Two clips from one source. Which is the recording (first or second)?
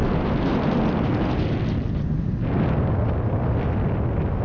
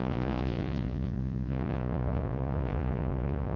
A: first